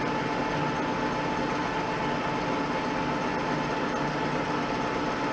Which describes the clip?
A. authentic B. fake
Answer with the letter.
A